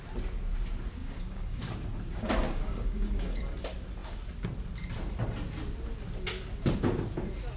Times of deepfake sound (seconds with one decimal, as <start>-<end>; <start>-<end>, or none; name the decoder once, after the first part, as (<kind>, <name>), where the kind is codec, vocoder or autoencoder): 1.0-1.6 (codec, DAC); 2.1-3.4